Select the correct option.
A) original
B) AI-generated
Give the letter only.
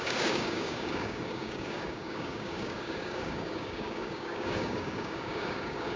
B